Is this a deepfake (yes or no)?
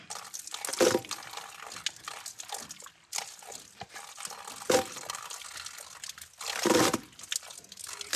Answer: no